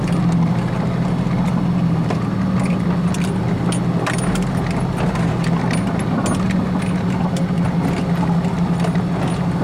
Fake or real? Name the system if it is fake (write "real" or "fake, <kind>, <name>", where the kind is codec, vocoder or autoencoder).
real